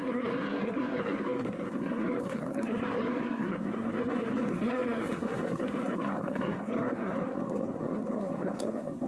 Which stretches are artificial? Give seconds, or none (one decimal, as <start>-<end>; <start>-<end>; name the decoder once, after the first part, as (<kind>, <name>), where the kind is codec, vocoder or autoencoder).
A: 0.0-9.1 (codec, SNAC)